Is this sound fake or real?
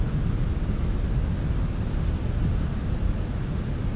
real